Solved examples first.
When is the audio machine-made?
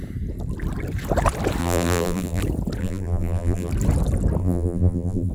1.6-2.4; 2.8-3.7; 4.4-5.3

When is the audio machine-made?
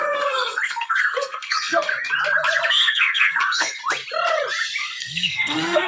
0.0-1.9; 2.7-3.8; 4.8-5.9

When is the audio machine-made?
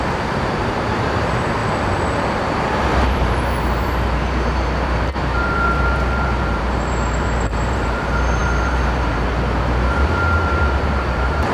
0.0-1.6; 2.5-11.5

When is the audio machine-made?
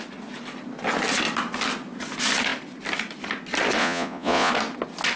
3.8-4.5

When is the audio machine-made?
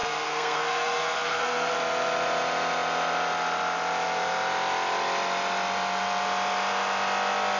0.0-1.7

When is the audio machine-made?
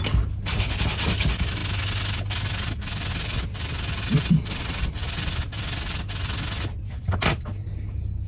none